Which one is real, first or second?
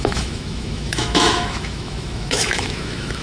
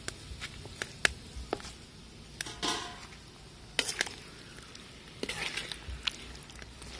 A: second